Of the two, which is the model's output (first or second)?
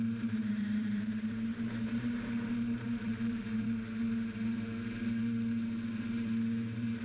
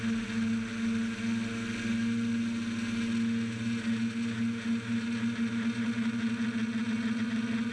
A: first